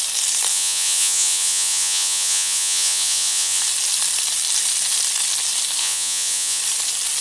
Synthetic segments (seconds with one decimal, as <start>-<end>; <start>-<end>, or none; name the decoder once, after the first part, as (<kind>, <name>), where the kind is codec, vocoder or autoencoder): 0.5-3.6 (vocoder, Vocos); 5.8-6.6